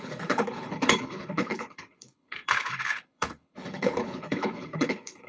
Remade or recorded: remade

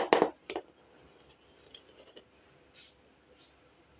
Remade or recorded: recorded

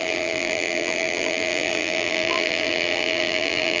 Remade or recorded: remade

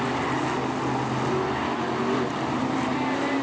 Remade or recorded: recorded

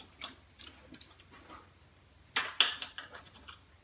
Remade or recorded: recorded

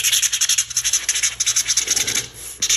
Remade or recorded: recorded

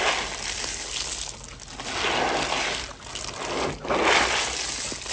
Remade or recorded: recorded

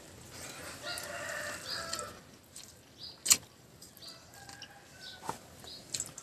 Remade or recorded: recorded